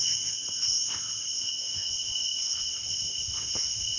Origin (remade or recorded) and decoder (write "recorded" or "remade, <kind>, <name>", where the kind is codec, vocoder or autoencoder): remade, codec, ZipCodec